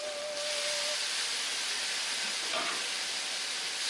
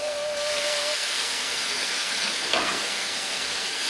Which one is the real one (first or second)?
first